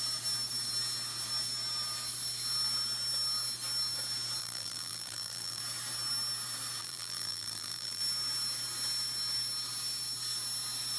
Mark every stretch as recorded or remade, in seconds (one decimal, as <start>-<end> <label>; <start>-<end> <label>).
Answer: 0.0-4.4 recorded; 4.4-5.6 remade; 5.6-6.8 recorded; 6.8-8.0 remade; 8.0-11.0 recorded